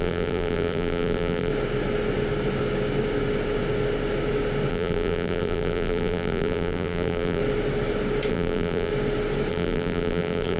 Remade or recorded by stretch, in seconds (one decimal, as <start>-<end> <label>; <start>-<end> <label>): 0.0-1.5 remade; 1.5-4.7 recorded; 4.7-7.4 remade; 7.4-8.3 recorded; 8.3-8.9 remade; 8.9-9.5 recorded; 9.5-10.6 remade